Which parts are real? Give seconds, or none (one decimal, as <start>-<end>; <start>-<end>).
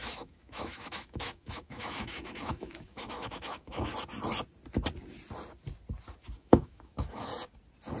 3.9-6.4; 7.3-8.0